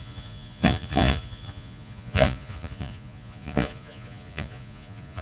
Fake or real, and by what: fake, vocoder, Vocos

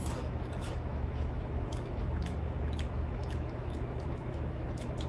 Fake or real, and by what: fake, autoencoder, DAC-VAE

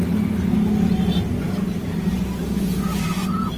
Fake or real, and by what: real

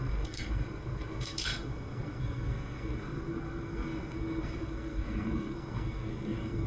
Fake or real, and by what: fake, codec, SNAC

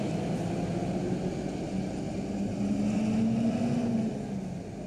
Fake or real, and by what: real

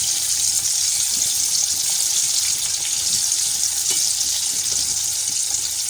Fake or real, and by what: real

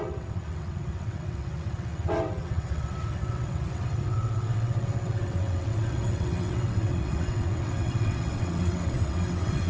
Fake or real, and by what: fake, vocoder, WaveNeXt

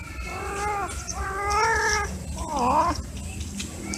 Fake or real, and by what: real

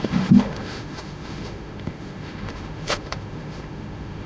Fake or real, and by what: fake, autoencoder, DAC-VAE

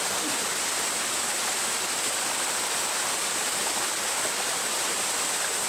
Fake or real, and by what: real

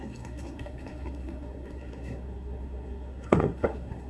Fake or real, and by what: fake, codec, SNAC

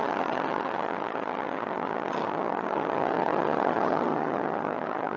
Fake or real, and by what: fake, vocoder, HiFi-GAN